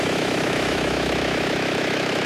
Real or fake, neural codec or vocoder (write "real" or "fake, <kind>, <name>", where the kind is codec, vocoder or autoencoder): fake, autoencoder, DAC-VAE